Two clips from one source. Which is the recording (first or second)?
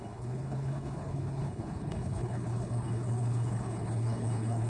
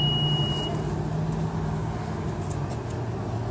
second